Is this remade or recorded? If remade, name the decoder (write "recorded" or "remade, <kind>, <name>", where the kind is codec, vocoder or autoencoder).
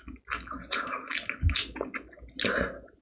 recorded